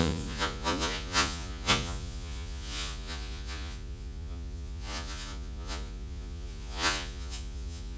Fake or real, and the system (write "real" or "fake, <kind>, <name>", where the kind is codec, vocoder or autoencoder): fake, vocoder, Vocos